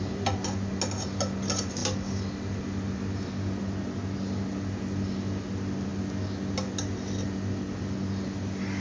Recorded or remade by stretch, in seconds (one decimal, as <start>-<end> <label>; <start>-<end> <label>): 0.0-8.8 recorded